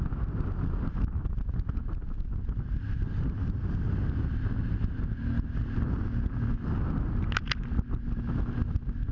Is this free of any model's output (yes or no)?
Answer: yes